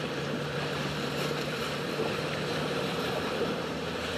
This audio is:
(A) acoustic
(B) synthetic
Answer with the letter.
B